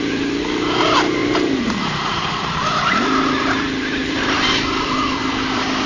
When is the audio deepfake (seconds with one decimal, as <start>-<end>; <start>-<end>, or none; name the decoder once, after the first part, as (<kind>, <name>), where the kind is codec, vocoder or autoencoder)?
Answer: 0.0-5.9 (vocoder, BigVGAN v2)